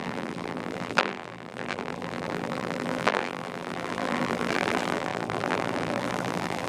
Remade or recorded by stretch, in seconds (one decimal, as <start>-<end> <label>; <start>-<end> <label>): 0.0-6.7 remade